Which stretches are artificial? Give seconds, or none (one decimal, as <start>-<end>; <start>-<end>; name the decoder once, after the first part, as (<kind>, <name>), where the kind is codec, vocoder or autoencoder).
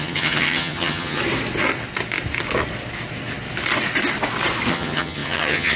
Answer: 0.0-1.2 (vocoder, HiFi-GAN); 4.7-5.8